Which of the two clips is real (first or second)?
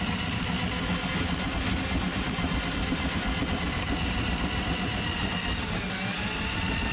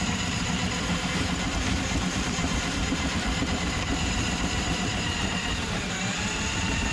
first